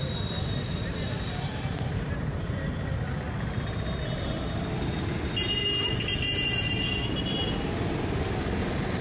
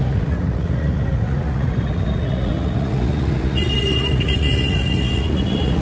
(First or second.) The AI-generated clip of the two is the second